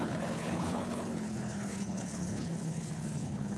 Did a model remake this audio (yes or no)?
yes